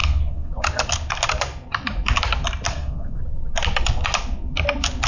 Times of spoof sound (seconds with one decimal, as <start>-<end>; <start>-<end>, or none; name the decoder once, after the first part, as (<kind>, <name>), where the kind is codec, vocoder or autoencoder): 0.0-0.5 (codec, SNAC); 2.7-3.2